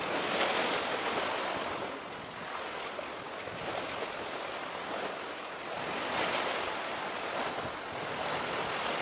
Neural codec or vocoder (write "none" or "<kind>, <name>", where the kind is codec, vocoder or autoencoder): none